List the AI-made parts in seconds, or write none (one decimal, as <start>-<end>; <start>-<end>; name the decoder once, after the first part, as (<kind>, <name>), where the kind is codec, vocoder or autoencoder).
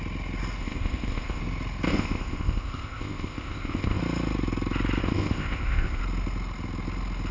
0.6-1.4 (codec, ZipCodec); 1.9-4.0; 5.0-6.0